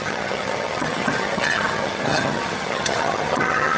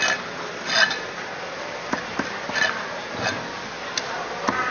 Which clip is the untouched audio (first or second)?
second